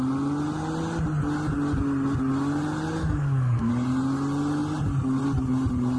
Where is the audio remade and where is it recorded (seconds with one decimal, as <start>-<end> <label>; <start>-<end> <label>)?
0.0-3.0 recorded; 3.0-3.7 remade; 3.7-6.0 recorded